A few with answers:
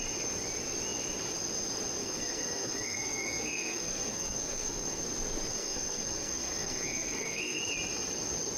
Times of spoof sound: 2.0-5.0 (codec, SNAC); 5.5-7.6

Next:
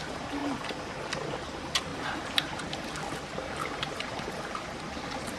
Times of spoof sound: none

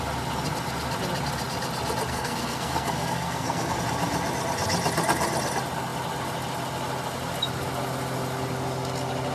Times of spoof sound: 2.1-3.8 (codec, SNAC)

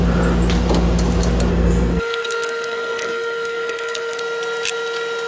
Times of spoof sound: 1.5-4.2 (codec, SNAC)

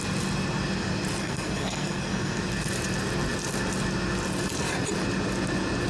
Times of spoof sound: 1.2-2.4 (codec, SNAC)

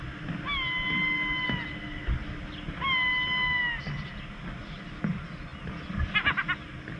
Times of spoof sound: none

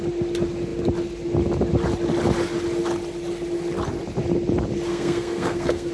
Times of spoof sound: 4.9-5.9 (codec, SNAC)

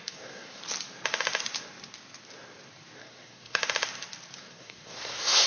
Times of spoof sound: 0.0-0.6 (codec, SNAC); 3.0-3.6; 4.4-5.5